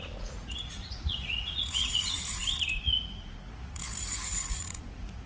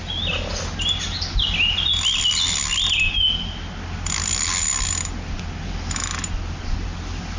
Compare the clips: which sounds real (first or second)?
second